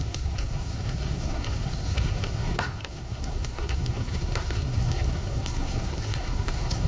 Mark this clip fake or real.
fake